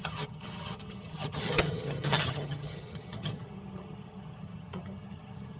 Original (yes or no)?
no